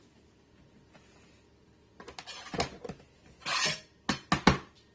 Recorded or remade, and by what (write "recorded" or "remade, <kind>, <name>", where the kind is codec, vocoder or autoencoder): recorded